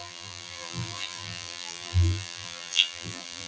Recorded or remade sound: remade